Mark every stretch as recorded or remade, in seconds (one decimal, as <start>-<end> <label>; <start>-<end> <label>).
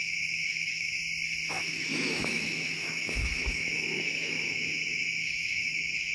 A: 0.0-1.0 remade; 1.0-1.5 recorded; 1.5-6.1 remade